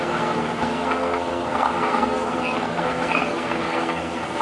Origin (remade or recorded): remade